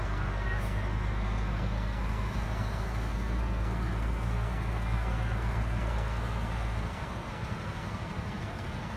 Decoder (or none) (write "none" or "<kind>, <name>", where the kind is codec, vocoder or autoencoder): codec, SNAC